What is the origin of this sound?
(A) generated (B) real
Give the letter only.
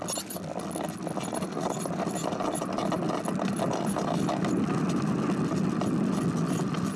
B